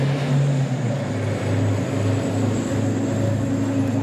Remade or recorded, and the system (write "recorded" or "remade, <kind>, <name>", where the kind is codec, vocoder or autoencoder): recorded